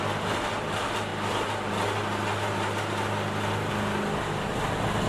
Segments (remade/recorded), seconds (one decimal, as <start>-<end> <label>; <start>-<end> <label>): 0.0-5.1 recorded